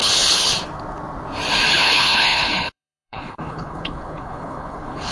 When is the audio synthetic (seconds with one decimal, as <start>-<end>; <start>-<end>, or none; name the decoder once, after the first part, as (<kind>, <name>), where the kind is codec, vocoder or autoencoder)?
0.0-0.5 (codec, HILCodec); 1.7-5.1